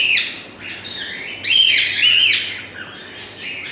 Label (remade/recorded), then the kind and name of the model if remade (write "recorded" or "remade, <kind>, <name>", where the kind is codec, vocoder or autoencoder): recorded